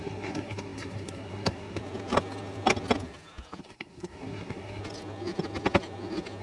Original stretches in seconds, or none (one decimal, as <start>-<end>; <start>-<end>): 1.8-3.6; 4.8-6.4